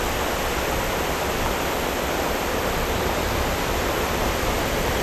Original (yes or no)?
yes